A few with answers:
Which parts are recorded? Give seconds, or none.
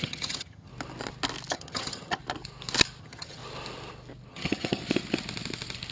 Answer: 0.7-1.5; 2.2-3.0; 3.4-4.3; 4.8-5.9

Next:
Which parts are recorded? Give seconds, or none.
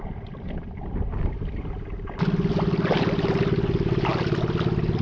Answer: 0.0-5.0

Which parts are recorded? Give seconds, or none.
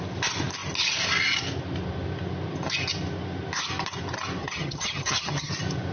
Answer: 0.0-4.4; 5.5-5.9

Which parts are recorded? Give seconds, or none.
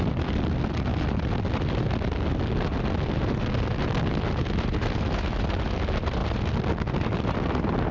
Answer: 0.0-7.9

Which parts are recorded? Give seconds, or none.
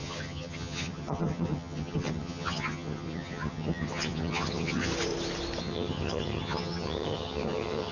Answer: 4.9-5.6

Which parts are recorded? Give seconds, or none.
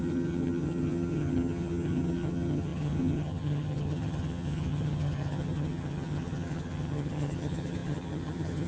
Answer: none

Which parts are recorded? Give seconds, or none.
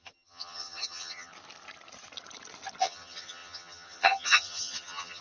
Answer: 1.3-2.8